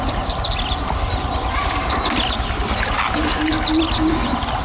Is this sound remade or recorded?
recorded